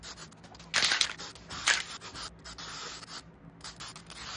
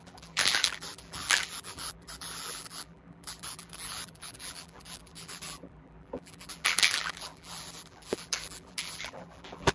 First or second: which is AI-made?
second